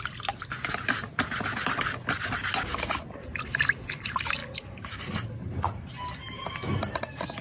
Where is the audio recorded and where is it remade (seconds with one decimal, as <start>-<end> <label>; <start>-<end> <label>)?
0.0-7.4 recorded